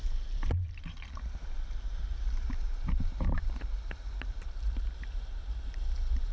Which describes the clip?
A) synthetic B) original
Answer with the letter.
A